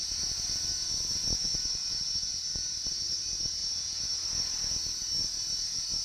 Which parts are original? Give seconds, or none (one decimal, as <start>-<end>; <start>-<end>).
0.0-6.0

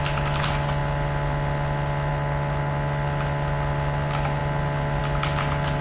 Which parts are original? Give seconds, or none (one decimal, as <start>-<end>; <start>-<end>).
0.0-5.8

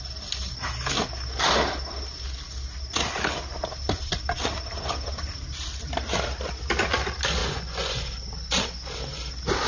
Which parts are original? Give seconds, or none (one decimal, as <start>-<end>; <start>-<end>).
0.0-7.4; 8.0-9.7

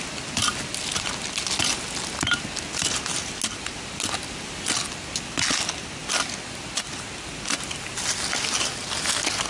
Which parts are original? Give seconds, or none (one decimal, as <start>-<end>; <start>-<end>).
0.0-9.5

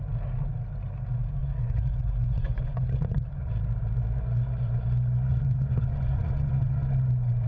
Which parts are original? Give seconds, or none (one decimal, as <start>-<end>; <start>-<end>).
0.0-1.4; 3.5-5.3; 6.5-7.5